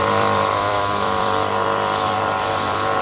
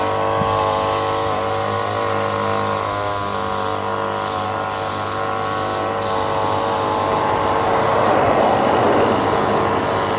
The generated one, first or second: first